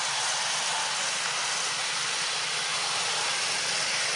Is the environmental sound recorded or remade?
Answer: recorded